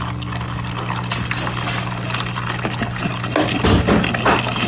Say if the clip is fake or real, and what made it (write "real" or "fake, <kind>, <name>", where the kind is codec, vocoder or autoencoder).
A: real